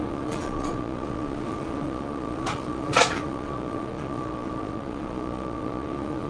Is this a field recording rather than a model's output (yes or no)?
no